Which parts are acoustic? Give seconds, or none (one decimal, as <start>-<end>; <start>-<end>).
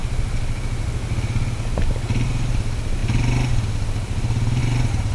0.0-5.1